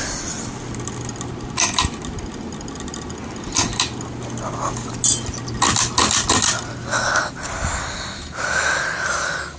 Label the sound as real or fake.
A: real